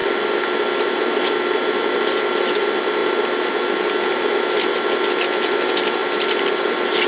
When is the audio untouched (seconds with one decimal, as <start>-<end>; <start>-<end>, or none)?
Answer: 0.0-7.1